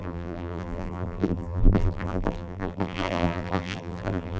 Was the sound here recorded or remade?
remade